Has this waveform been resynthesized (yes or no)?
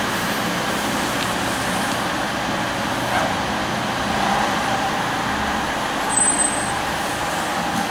no